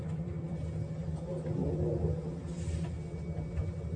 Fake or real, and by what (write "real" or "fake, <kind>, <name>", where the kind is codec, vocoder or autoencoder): real